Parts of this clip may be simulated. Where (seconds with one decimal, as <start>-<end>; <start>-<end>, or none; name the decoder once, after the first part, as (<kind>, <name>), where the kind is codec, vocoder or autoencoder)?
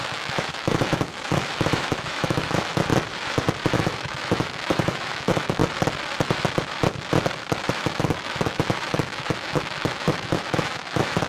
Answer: 0.0-2.9 (autoencoder, DAC-VAE); 3.7-5.6; 7.7-11.3